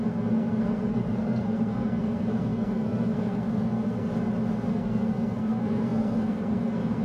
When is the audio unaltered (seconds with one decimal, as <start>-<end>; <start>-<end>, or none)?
4.1-4.7